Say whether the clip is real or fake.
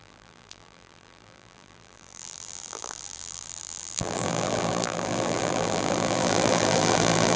fake